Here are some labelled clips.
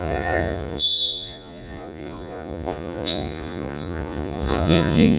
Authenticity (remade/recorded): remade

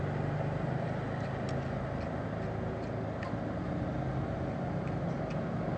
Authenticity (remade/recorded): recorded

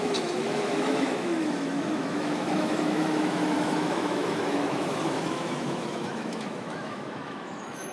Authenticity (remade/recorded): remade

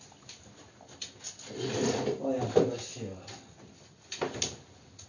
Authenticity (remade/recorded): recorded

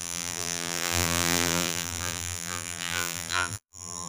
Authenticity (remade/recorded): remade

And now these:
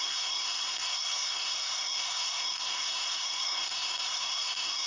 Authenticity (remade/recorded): remade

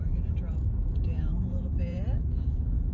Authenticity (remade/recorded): remade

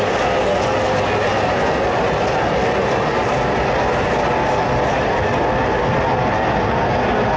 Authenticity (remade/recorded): recorded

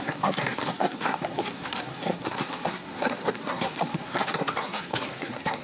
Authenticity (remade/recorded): remade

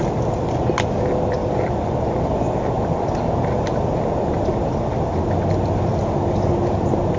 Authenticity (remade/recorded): recorded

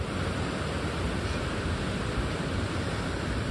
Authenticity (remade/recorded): recorded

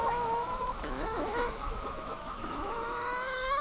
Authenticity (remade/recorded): remade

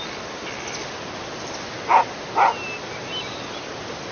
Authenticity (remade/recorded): recorded